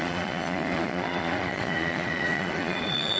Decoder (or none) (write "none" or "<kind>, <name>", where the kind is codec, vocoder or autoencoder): vocoder, Vocos